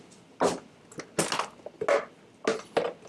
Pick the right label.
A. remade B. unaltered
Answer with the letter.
B